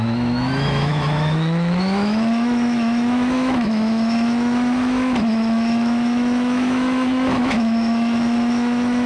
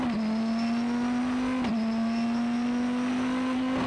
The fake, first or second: first